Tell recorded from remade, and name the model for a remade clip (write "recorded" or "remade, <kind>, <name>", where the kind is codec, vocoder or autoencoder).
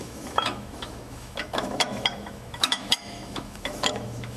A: remade, autoencoder, DAC-VAE